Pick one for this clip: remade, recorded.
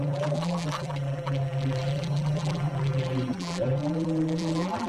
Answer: remade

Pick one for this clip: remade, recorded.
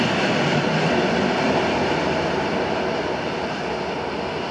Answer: recorded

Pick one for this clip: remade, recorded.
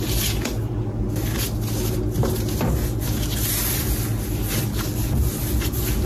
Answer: recorded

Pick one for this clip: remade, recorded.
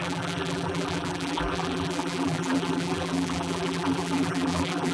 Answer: remade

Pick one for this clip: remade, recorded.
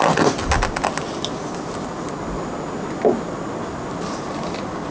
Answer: recorded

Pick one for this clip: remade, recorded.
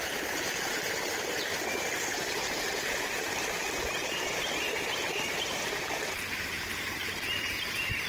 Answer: remade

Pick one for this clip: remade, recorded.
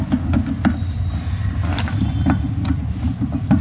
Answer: recorded